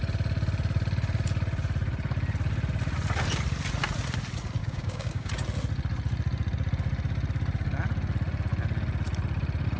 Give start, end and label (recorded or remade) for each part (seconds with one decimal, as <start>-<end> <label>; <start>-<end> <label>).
0.0-4.6 recorded; 4.6-5.3 remade; 5.3-9.8 recorded